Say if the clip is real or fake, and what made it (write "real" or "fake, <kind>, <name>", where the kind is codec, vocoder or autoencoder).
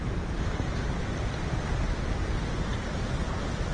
real